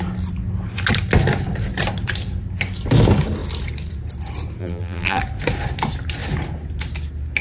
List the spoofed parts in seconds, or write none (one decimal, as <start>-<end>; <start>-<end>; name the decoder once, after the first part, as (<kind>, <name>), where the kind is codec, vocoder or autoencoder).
4.6-5.2 (vocoder, BigVGAN v2)